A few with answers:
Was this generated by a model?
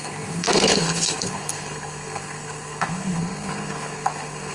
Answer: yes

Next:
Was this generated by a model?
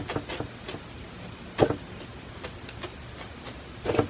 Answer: no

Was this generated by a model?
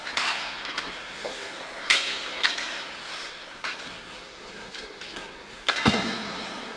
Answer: yes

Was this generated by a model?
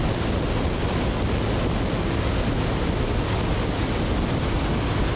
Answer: no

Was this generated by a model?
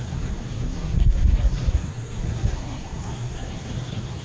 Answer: yes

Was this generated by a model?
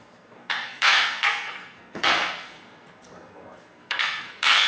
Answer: yes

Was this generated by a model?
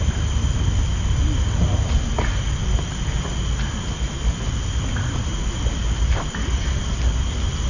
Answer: no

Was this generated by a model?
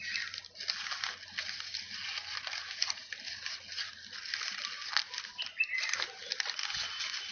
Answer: no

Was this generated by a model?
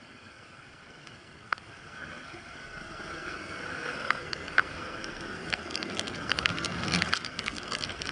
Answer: yes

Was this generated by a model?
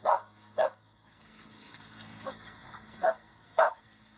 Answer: yes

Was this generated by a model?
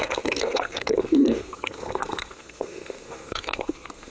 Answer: yes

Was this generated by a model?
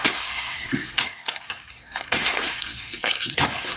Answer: yes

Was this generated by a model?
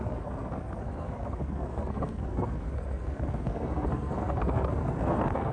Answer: yes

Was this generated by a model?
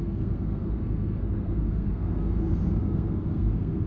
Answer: yes